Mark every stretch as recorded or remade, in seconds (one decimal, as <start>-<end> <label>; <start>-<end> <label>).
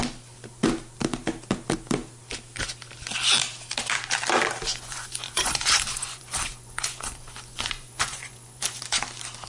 0.0-4.7 recorded; 4.7-8.8 remade; 8.8-9.5 recorded